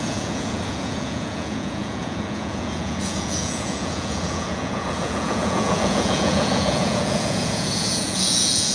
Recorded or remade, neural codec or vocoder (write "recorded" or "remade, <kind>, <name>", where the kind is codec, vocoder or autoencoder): remade, vocoder, Vocos